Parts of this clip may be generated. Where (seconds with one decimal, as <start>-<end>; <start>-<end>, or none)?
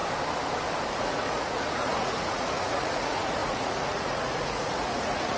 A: 0.9-5.4